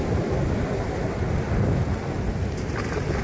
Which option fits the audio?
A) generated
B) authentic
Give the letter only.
B